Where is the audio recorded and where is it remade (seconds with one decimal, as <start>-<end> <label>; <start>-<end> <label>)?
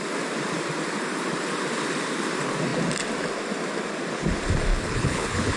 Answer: 0.0-4.7 recorded; 4.7-5.6 remade